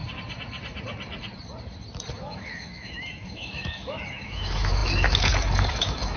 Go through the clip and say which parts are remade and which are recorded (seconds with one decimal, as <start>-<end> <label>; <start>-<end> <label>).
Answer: 0.0-2.1 recorded; 2.1-6.2 remade